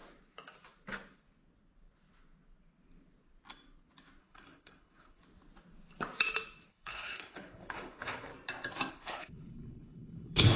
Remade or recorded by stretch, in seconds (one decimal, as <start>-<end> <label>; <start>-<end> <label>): 0.0-4.2 recorded; 4.2-5.2 remade; 5.2-6.7 recorded; 6.7-8.3 remade; 8.3-8.9 recorded; 8.9-10.6 remade